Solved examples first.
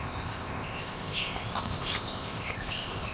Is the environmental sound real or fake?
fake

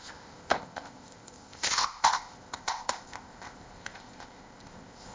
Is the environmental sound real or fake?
fake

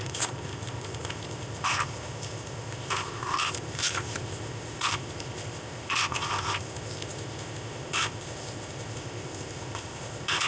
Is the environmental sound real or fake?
fake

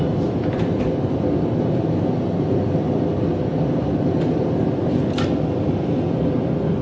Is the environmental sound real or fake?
real